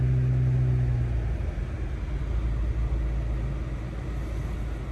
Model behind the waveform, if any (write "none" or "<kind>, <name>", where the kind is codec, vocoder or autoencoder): none